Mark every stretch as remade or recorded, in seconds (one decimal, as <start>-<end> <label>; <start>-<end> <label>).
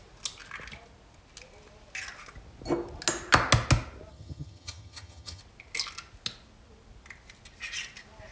0.0-4.1 recorded; 4.1-5.4 remade; 5.4-8.3 recorded